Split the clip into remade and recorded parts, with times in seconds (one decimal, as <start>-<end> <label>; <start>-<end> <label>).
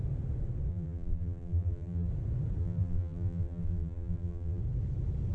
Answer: 0.0-0.7 recorded; 0.7-2.1 remade; 2.1-2.6 recorded; 2.6-4.6 remade; 4.6-5.3 recorded